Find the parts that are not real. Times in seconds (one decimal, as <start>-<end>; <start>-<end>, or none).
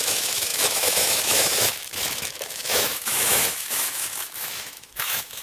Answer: 0.0-5.4